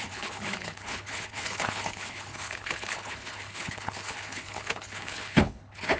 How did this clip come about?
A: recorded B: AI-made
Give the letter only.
B